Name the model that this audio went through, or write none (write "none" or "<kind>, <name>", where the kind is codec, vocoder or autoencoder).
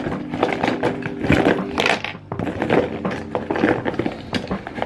none